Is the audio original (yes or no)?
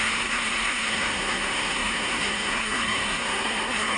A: no